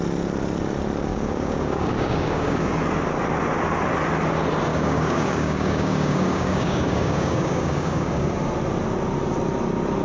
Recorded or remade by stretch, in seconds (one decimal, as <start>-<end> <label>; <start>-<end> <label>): 0.0-1.1 recorded; 1.1-2.7 remade; 2.7-4.7 recorded; 4.7-8.3 remade; 8.3-10.0 recorded